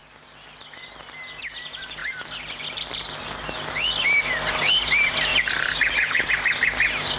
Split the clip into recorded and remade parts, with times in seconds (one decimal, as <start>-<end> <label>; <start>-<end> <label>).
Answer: 0.0-5.3 recorded; 5.3-6.3 remade; 6.3-7.2 recorded